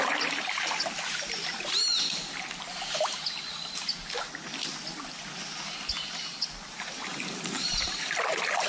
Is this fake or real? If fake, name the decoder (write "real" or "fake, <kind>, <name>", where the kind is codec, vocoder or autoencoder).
real